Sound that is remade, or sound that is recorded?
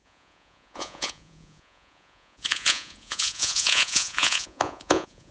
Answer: remade